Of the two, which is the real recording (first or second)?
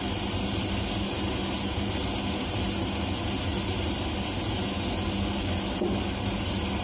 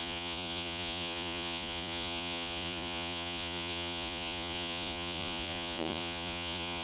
first